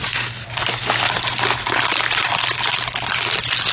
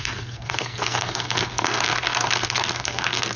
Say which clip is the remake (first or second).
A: second